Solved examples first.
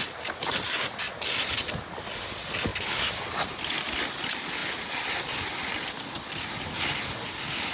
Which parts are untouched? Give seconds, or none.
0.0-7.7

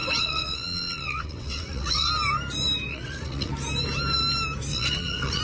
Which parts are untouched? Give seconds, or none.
2.1-2.9; 3.5-4.7